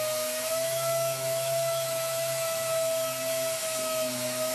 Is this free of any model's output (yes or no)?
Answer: no